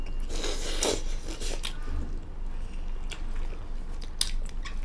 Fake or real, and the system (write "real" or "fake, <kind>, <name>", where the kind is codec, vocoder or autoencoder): real